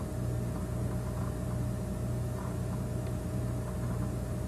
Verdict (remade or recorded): recorded